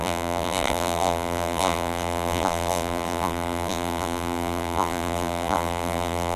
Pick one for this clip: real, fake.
fake